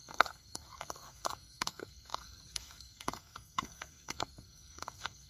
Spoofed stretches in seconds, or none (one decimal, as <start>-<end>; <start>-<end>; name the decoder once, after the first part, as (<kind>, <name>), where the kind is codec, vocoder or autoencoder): 0.0-5.3 (codec, SNAC)